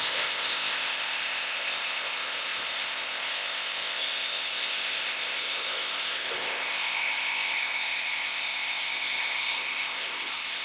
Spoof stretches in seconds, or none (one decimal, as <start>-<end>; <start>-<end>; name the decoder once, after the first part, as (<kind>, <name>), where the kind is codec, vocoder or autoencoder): 0.0-10.6 (codec, ZipCodec)